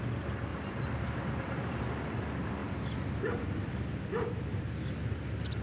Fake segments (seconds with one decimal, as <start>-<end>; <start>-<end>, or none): 0.5-1.8; 2.6-4.1